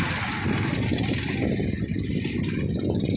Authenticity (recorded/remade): recorded